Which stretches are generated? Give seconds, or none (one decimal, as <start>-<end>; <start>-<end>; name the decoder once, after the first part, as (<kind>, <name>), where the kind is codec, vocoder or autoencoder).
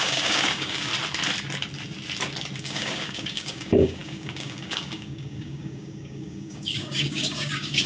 0.0-0.9 (codec, DAC); 2.6-7.9